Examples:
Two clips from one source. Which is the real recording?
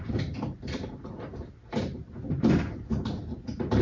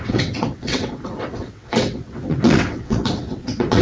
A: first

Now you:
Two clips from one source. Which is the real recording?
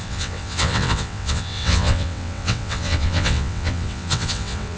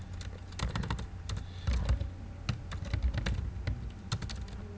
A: second